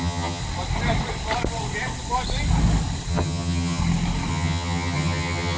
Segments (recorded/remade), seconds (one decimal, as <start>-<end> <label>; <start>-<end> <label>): 0.0-0.4 remade; 0.4-3.1 recorded; 3.1-3.8 remade; 3.8-4.3 recorded; 4.3-5.6 remade